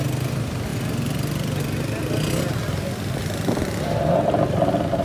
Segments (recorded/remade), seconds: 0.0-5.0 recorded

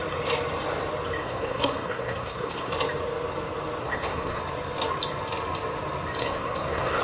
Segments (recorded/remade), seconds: 0.0-1.2 recorded; 1.2-2.7 remade; 2.7-3.8 recorded; 3.8-4.4 remade; 4.4-6.2 recorded; 6.2-7.0 remade

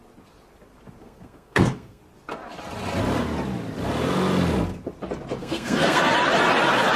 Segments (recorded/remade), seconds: 0.0-1.0 recorded; 1.0-2.0 remade; 2.0-5.4 recorded; 5.4-6.1 remade; 6.1-7.0 recorded